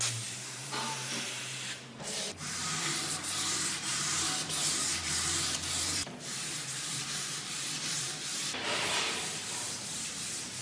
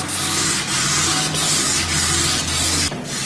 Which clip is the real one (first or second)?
second